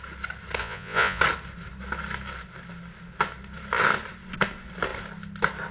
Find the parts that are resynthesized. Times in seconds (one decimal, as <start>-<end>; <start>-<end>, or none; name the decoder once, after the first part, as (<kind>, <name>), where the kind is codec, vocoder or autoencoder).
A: 0.6-1.2 (vocoder, Vocos)

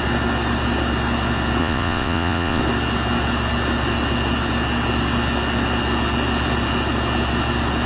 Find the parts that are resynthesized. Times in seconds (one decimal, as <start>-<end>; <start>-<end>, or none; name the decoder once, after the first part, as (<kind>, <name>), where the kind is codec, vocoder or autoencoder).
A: 1.6-2.6 (vocoder, Vocos)

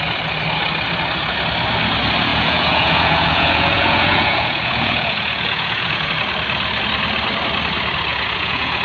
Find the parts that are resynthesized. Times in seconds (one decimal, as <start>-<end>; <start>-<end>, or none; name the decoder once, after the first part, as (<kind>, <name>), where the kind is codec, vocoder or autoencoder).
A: 2.3-6.1 (vocoder, Vocos); 8.1-8.8